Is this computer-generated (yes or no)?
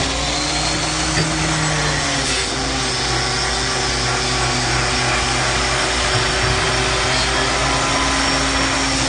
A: no